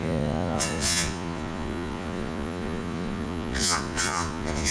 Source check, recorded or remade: remade